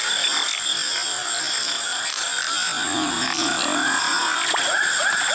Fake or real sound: real